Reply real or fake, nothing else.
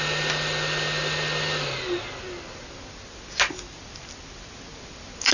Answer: real